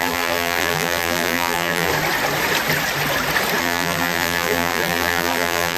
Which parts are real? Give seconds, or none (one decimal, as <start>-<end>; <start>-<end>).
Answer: 1.9-3.6